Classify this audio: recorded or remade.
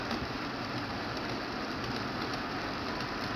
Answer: recorded